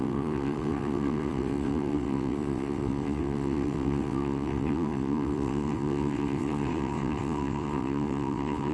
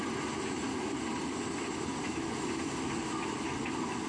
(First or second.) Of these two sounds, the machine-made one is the first